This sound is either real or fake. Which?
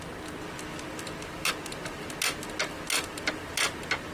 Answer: real